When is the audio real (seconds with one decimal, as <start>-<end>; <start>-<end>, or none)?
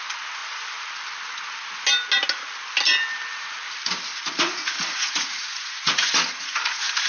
0.0-4.1